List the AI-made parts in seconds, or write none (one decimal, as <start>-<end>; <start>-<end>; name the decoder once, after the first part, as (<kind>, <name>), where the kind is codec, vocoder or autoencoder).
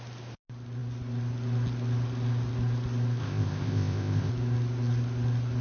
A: 3.2-4.3 (codec, ZipCodec)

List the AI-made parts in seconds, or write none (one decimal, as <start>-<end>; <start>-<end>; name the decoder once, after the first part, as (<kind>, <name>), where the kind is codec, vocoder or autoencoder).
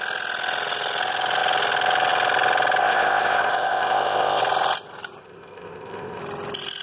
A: 2.8-4.4 (codec, ZipCodec); 5.2-6.2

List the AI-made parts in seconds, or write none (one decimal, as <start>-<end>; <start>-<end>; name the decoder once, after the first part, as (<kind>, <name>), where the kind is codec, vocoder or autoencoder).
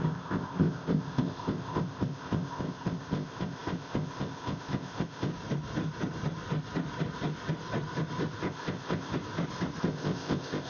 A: 0.0-5.3 (codec, ZipCodec); 8.4-9.1; 9.8-10.7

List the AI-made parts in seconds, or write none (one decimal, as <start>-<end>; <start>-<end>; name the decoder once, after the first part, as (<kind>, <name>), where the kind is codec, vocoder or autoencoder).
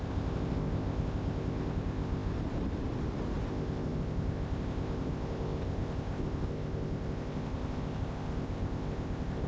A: 0.0-2.3 (codec, ZipCodec); 3.5-9.5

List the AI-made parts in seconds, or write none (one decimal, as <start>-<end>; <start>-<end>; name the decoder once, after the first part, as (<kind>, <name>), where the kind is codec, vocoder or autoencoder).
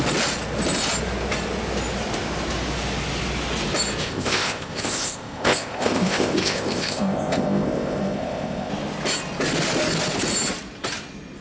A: 4.0-8.7 (codec, ZipCodec)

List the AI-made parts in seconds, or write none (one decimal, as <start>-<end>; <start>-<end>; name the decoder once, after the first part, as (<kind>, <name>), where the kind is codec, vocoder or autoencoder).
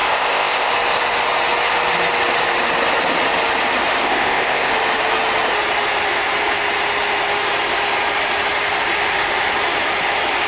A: 0.0-0.7 (codec, ZipCodec); 4.0-4.7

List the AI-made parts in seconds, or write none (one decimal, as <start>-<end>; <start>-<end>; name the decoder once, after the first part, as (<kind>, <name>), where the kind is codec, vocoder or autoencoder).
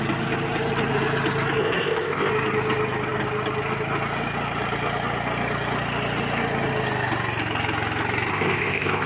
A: 1.6-2.3 (codec, ZipCodec); 8.3-9.1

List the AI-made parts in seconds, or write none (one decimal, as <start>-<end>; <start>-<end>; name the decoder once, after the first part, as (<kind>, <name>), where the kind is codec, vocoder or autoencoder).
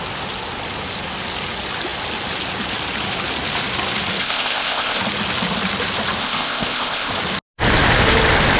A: 4.2-5.0 (codec, ZipCodec); 6.2-7.1